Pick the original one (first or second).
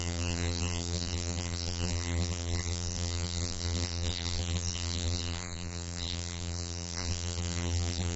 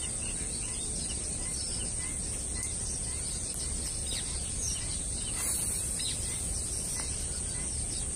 second